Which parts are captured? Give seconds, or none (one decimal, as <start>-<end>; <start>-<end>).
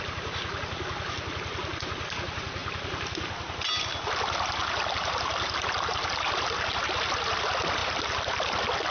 0.0-8.9